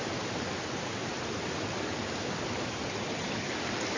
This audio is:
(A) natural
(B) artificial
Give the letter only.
A